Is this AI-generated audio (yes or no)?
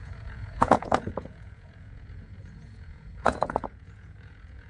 yes